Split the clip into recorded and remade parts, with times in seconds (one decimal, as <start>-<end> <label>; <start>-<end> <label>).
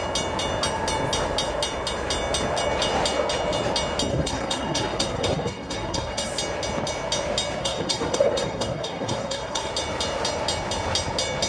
0.0-4.1 recorded; 4.1-6.3 remade; 6.3-7.6 recorded; 7.6-9.7 remade; 9.7-11.5 recorded